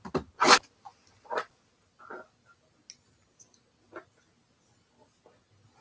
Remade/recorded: recorded